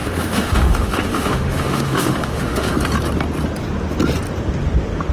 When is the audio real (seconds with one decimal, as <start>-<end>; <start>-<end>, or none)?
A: 2.7-5.1